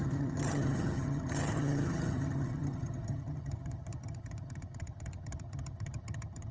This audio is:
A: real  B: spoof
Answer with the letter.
B